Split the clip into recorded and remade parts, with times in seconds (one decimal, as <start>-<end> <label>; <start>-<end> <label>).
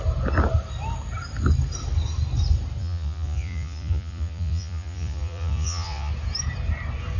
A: 0.0-2.8 recorded; 2.8-6.1 remade; 6.1-7.2 recorded